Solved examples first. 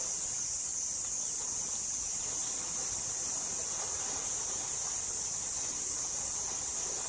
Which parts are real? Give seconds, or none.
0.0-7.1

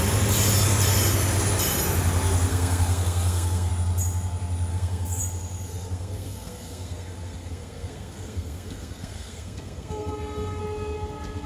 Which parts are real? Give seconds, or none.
0.0-2.5; 3.7-4.7; 5.2-5.7; 10.6-11.5

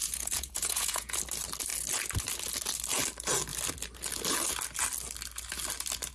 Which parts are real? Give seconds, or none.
1.2-6.1